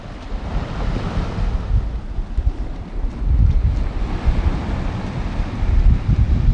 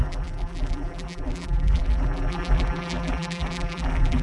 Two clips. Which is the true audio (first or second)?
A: first